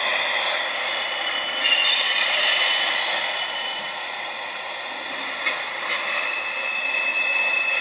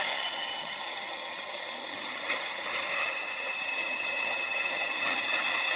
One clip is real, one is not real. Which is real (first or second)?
first